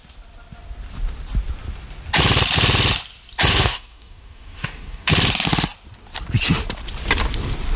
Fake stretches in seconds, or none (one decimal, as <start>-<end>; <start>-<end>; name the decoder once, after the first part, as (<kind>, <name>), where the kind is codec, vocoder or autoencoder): 3.5-5.1 (codec, DAC)